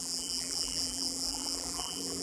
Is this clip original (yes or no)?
no